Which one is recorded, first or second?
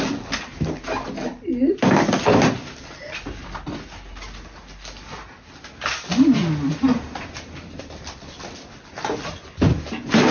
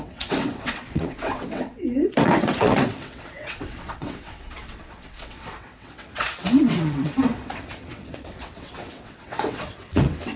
first